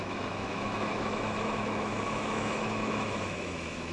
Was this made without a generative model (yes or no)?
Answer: no